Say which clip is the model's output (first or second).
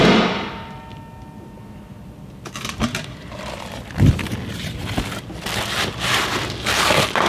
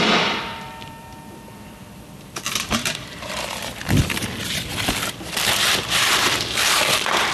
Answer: second